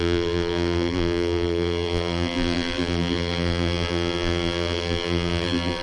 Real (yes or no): no